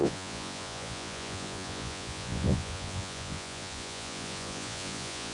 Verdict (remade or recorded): remade